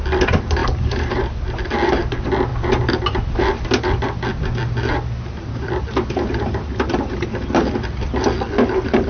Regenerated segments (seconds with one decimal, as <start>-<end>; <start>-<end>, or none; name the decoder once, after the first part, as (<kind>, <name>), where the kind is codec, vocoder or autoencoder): 0.6-1.2 (vocoder, BigVGAN v2)